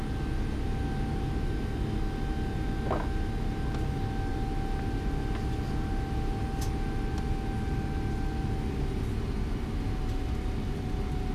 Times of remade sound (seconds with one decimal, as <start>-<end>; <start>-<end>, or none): none